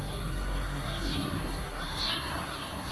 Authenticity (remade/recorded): remade